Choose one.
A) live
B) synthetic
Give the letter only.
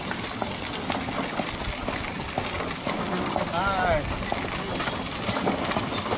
A